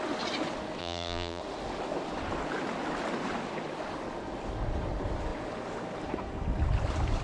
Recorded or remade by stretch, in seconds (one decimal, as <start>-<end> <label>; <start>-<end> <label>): 0.0-0.8 recorded; 0.8-1.4 remade; 1.4-7.2 recorded